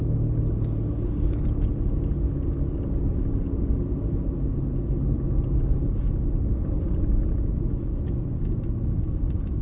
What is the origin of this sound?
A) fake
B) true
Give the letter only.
B